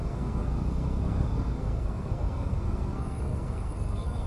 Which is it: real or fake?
fake